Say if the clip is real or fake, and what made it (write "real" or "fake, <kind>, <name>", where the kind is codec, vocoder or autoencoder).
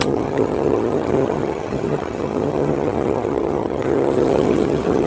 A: fake, vocoder, HiFi-GAN